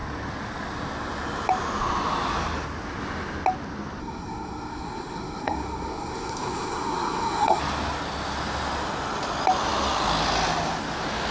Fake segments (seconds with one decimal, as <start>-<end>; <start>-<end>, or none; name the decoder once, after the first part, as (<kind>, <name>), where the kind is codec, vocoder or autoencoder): 4.0-7.6 (codec, SNAC)